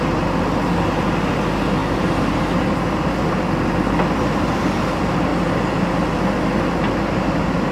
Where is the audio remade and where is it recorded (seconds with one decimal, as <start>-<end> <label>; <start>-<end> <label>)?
0.0-1.8 recorded; 1.8-2.6 remade; 2.6-7.7 recorded